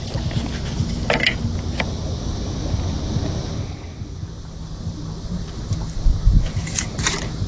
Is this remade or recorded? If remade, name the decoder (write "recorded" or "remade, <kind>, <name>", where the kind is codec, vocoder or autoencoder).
recorded